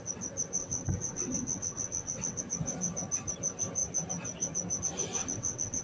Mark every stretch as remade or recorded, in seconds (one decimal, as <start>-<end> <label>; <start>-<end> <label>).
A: 0.0-0.6 recorded; 0.6-2.4 remade; 2.4-5.2 recorded; 5.2-5.8 remade